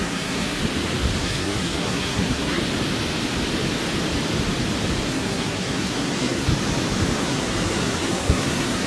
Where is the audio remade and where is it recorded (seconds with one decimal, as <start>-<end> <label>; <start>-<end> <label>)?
0.0-0.6 remade; 0.6-1.2 recorded; 1.2-2.6 remade; 2.6-5.1 recorded; 5.1-6.5 remade; 6.5-7.2 recorded; 7.2-8.9 remade